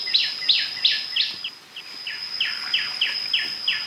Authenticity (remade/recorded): recorded